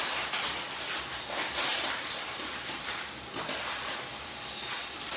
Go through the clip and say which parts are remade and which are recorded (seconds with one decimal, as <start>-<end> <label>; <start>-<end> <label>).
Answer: 0.0-5.2 remade